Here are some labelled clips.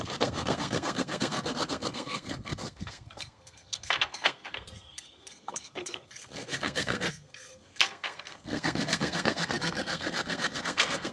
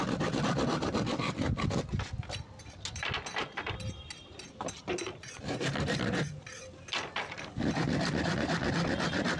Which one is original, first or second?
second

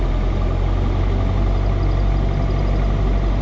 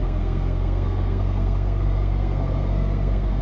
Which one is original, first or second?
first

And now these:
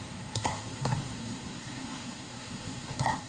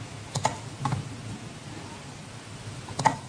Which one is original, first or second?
second